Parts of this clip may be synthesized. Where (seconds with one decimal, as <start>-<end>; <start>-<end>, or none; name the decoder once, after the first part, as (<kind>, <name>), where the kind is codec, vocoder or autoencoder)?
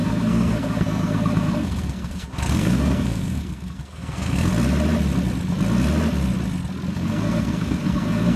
0.0-4.5 (codec, SNAC); 6.9-8.4